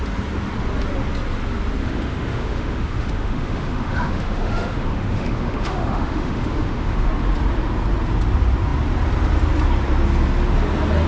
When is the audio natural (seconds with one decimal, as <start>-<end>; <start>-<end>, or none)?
0.0-1.8; 7.1-11.1